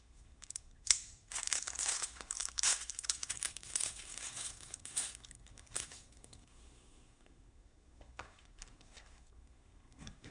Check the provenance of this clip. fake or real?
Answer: fake